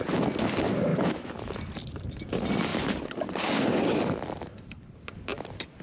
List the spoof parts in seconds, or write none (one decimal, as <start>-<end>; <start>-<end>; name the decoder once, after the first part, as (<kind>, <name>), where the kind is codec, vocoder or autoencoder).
0.9-1.5 (autoencoder, DAC-VAE)